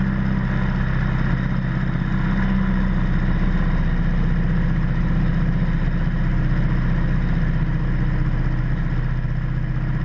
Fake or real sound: real